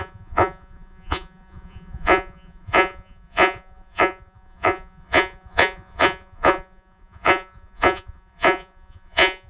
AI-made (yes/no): yes